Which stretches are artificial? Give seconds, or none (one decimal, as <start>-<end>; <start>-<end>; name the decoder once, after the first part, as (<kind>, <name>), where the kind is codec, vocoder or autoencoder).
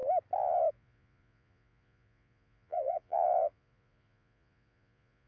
0.7-5.3 (vocoder, Vocos)